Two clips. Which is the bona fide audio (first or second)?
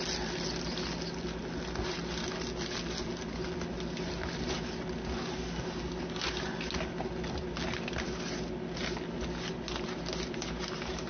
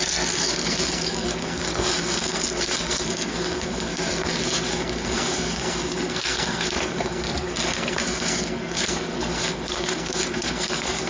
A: first